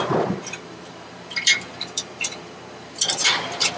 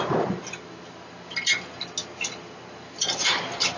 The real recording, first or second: second